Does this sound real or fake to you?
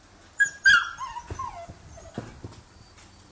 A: real